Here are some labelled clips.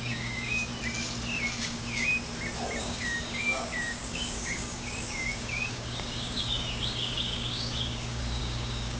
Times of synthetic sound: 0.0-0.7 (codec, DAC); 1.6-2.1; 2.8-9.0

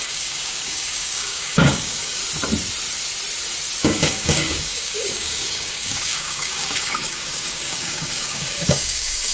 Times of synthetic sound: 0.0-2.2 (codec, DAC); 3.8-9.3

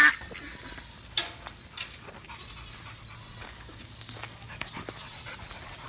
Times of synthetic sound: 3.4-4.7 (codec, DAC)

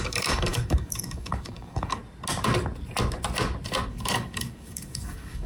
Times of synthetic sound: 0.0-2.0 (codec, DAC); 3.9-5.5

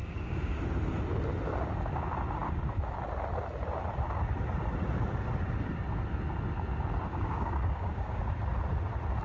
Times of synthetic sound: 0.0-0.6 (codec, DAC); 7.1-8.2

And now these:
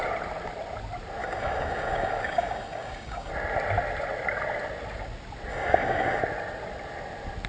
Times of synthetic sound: 1.2-3.3 (codec, DAC); 5.5-6.2

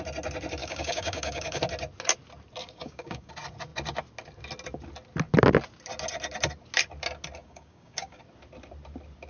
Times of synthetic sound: 0.6-1.6 (codec, DAC); 2.6-3.3; 7.4-8.2

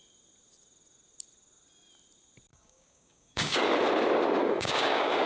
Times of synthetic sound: 2.5-3.6 (codec, DAC); 4.4-5.3